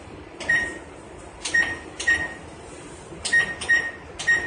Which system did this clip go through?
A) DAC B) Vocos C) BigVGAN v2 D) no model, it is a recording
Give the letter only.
D